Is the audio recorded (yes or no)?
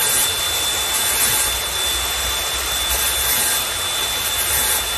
yes